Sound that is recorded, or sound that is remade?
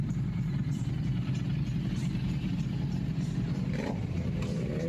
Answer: remade